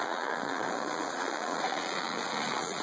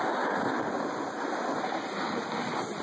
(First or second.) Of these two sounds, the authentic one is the second